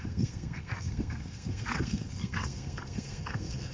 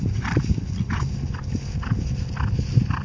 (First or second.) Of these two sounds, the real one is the second